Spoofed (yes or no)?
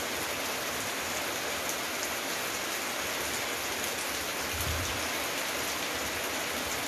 no